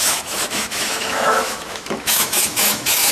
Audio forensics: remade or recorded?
remade